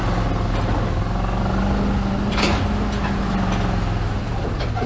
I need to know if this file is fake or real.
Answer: real